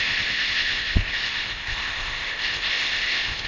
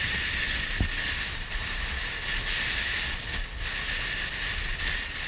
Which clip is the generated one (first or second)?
first